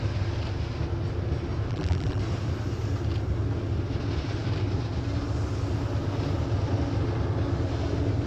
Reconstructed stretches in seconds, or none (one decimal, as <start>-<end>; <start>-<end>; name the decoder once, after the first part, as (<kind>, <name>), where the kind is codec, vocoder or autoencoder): 1.7-2.2 (vocoder, BigVGAN v2)